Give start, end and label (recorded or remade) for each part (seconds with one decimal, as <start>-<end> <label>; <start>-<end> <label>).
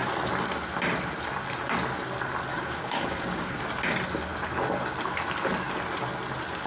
0.0-2.5 recorded; 2.5-3.5 remade; 3.5-6.7 recorded